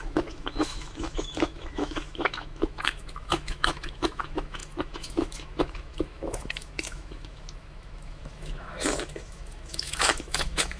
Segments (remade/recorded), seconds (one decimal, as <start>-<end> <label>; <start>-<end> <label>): 0.0-10.8 remade